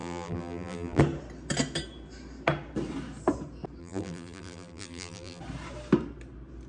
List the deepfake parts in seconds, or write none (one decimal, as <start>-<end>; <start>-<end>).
0.0-1.0; 3.8-5.4